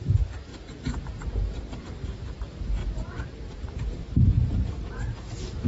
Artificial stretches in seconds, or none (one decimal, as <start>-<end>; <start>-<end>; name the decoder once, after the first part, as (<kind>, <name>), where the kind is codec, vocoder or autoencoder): 0.0-5.7 (vocoder, BigVGAN v2)